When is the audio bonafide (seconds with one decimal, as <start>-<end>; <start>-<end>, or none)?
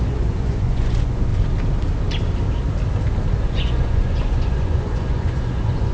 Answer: 1.3-3.3